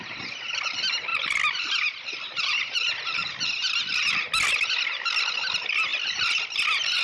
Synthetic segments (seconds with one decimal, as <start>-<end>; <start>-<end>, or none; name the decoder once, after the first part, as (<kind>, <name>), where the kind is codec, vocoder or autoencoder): none